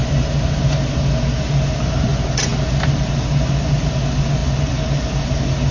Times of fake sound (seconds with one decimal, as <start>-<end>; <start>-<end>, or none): 0.0-0.5